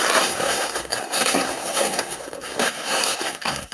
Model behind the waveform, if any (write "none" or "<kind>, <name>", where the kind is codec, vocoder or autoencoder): codec, SNAC